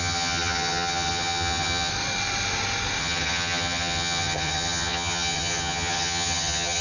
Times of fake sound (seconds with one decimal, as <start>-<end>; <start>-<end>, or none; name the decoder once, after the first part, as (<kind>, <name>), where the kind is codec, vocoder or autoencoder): 0.0-1.9 (vocoder, HiFi-GAN); 3.0-6.8